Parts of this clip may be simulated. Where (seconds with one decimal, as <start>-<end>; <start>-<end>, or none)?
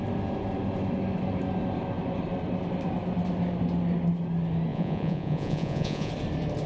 4.7-6.1